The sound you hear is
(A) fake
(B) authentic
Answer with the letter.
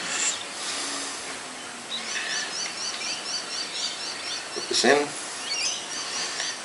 B